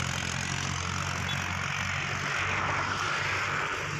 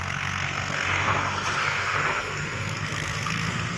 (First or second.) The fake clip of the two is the second